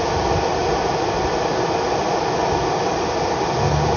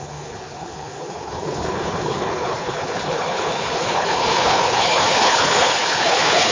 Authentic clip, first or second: first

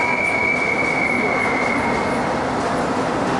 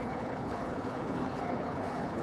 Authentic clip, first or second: first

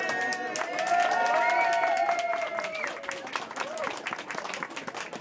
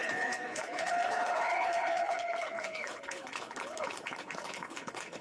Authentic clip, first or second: first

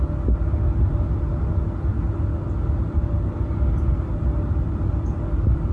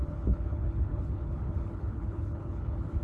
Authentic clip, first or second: first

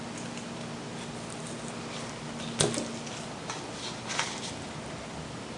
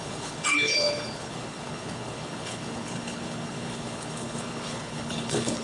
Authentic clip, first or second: first